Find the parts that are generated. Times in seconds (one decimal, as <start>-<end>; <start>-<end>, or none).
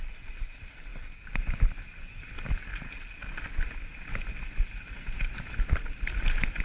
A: none